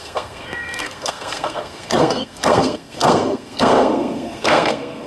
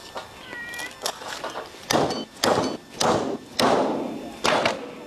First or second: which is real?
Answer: second